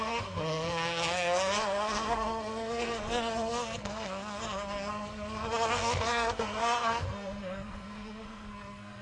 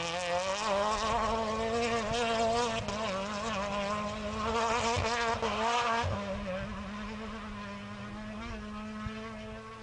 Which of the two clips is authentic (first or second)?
second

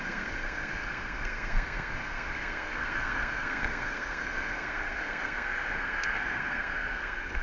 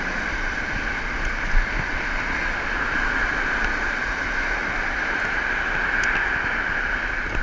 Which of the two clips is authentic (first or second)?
second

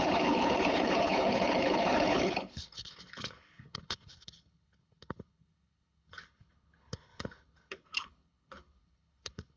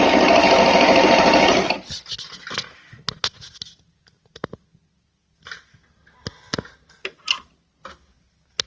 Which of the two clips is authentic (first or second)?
second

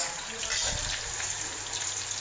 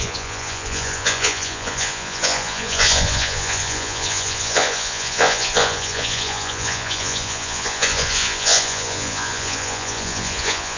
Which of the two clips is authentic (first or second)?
first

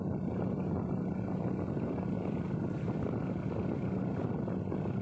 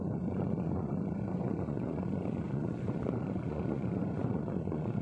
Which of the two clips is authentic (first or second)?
first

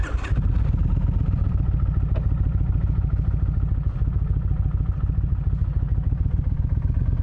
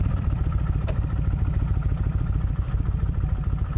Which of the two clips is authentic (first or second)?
first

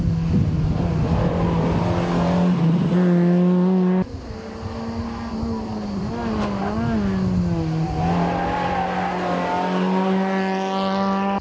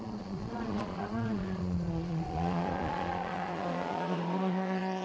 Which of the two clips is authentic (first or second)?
first